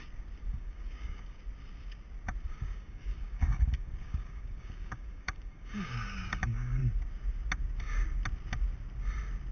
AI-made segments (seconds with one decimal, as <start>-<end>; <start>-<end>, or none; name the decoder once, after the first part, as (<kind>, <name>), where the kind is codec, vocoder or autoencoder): 0.5-1.4 (codec, DAC); 2.5-6.8

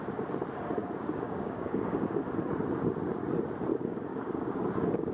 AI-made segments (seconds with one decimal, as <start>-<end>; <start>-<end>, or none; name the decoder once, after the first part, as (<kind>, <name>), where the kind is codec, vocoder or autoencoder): 0.8-2.4 (codec, DAC); 3.7-5.1

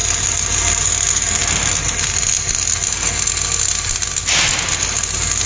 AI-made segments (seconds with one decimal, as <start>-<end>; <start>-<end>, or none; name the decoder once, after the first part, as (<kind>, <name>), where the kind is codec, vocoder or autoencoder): none

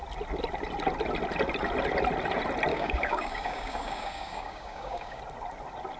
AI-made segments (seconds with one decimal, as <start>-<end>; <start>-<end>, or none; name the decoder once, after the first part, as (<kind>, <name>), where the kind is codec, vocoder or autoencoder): 2.7-5.2 (codec, DAC)

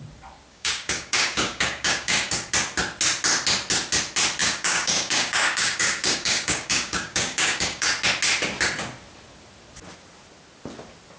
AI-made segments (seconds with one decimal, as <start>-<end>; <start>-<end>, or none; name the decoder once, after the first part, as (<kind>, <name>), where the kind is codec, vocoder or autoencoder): 0.5-2.5 (codec, DAC); 4.4-7.9

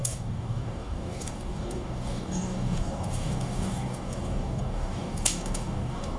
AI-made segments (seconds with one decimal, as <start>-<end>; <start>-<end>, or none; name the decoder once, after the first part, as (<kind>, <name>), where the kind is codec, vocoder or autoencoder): 0.0-6.2 (codec, DAC)

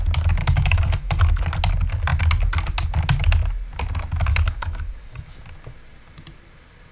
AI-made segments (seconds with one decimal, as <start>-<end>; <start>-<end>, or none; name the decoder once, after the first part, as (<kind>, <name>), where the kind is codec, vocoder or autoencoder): 0.4-1.4 (codec, DAC); 4.3-5.3